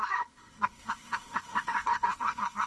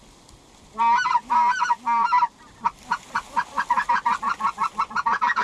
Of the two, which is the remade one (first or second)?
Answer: first